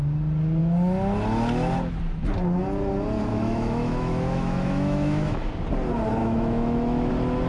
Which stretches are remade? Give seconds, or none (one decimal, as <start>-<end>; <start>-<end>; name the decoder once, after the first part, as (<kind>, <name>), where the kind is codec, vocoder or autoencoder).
3.3-5.5 (autoencoder, DAC-VAE); 6.2-7.1